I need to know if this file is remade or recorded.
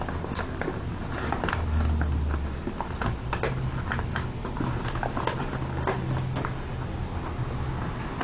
recorded